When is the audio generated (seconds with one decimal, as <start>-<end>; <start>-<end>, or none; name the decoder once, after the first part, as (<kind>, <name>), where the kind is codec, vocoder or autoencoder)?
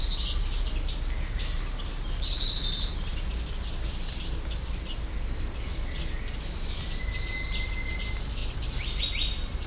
none